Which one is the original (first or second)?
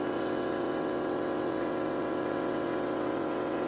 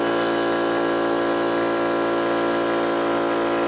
second